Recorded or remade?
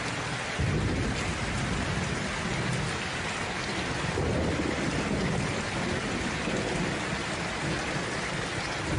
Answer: recorded